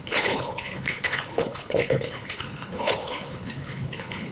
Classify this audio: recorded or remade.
remade